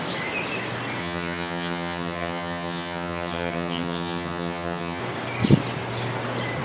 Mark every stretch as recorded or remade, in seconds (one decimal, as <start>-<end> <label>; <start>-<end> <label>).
0.0-1.0 recorded; 1.0-5.0 remade; 5.0-6.6 recorded